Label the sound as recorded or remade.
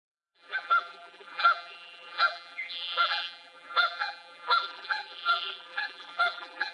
remade